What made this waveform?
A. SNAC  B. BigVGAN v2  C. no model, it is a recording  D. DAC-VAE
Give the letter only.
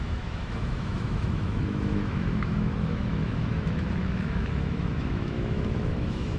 D